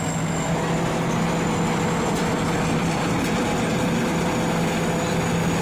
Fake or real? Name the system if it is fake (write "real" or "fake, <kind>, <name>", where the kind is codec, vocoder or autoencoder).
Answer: real